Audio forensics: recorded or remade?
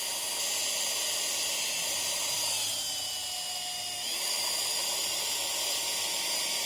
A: recorded